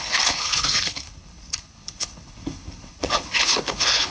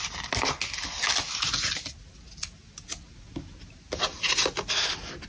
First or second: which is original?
second